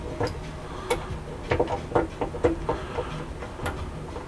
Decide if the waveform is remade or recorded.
recorded